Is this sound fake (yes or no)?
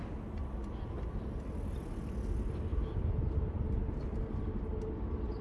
no